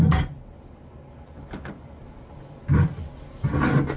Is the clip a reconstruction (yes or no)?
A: no